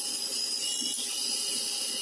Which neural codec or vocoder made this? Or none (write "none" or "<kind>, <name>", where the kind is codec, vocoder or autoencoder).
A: none